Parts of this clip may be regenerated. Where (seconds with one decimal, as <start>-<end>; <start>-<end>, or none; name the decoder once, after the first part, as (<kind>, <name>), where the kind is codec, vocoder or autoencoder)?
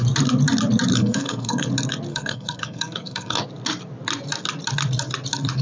0.9-1.7 (codec, SNAC); 2.1-3.4